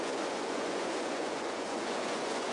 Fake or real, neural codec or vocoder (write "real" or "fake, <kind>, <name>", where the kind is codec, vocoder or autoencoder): fake, vocoder, Vocos